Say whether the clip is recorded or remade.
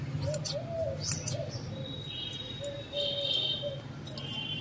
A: recorded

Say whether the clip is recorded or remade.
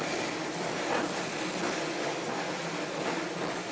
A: recorded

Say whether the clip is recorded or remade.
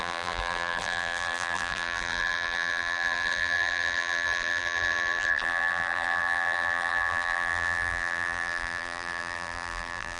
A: remade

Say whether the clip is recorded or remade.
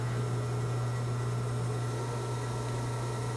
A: recorded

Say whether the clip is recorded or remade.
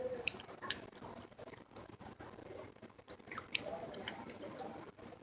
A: remade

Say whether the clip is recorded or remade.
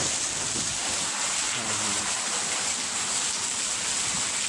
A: recorded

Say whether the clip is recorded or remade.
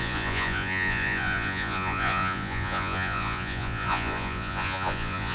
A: remade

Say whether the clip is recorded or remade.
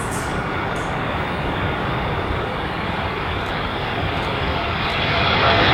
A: remade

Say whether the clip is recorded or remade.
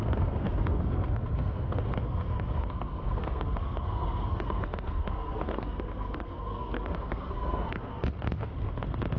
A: remade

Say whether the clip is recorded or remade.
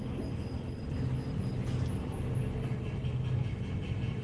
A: recorded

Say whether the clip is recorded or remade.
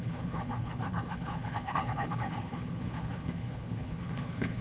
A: remade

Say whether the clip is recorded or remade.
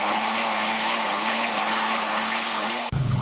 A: remade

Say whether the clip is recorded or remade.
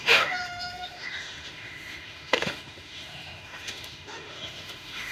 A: remade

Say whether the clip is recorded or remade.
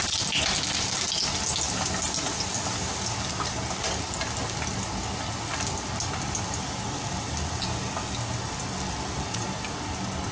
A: recorded